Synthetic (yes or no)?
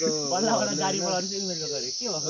no